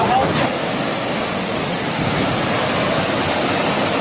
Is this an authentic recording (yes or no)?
yes